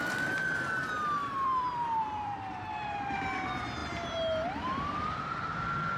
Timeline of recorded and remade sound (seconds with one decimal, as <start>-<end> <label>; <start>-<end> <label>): 0.0-1.2 recorded; 1.2-3.0 remade; 3.0-6.0 recorded

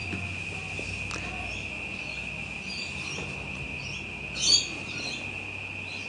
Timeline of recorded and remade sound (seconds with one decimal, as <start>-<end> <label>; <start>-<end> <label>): 0.0-6.1 recorded

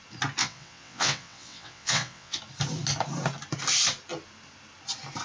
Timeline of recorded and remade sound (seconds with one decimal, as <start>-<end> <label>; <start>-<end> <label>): 0.0-0.4 recorded; 0.4-2.4 remade; 2.4-5.2 recorded

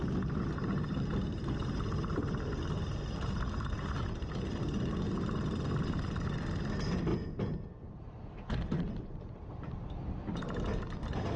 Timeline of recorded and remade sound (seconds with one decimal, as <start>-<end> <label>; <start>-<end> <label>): 0.0-11.4 recorded